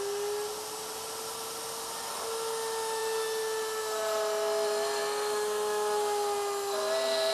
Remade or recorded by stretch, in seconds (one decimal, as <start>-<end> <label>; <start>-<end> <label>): 0.0-7.3 recorded